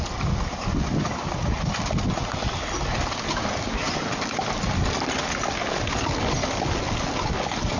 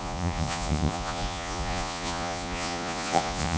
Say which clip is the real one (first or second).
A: first